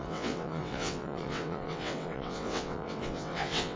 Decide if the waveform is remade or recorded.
remade